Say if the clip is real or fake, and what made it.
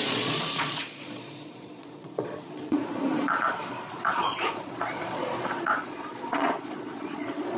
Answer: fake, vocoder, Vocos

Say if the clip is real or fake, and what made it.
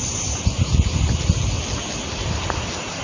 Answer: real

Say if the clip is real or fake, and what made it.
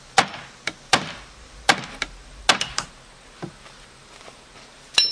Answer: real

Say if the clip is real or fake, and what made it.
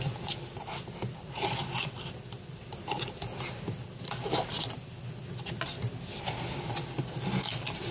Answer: real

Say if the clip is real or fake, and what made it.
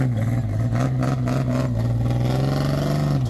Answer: real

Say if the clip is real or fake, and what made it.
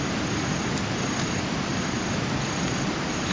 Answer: real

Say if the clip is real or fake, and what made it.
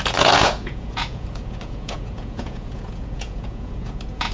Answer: fake, vocoder, Vocos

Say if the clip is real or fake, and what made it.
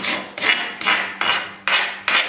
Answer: real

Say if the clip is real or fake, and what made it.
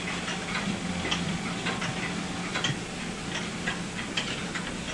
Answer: real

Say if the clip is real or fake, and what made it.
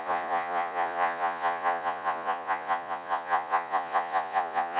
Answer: fake, vocoder, Vocos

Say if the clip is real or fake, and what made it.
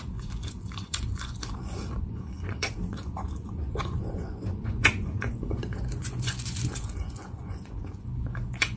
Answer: fake, vocoder, Vocos